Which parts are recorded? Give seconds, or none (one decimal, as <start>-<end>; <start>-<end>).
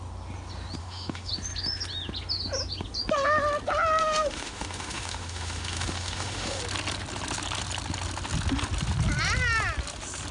0.0-0.8; 1.3-4.0; 6.6-10.3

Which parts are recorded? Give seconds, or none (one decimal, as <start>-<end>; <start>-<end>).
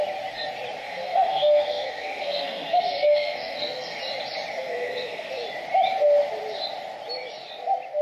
0.0-0.8; 4.0-4.6; 5.3-8.0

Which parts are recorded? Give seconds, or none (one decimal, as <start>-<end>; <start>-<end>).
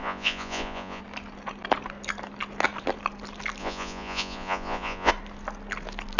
1.0-3.6; 5.1-6.2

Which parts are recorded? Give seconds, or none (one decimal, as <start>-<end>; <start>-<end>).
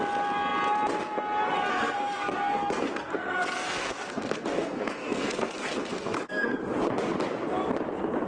0.0-1.7; 6.6-8.3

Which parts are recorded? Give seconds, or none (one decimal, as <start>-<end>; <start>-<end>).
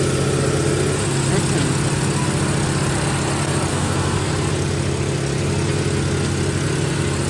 0.0-3.7; 4.3-7.3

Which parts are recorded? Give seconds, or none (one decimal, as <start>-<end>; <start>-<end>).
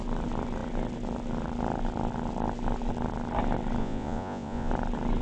0.0-3.8; 4.7-5.2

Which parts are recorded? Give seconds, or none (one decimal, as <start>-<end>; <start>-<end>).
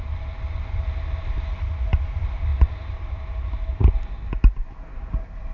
0.0-2.5; 3.9-5.5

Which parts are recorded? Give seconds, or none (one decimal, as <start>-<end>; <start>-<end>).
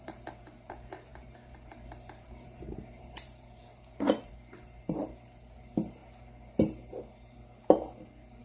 6.0-8.4